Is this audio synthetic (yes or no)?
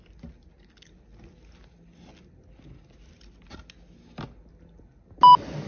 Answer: no